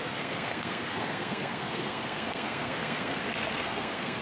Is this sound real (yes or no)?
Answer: no